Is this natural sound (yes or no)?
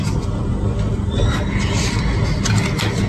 yes